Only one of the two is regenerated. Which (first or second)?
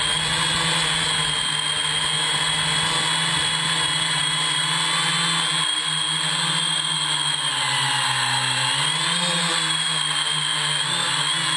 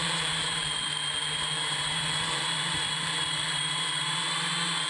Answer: second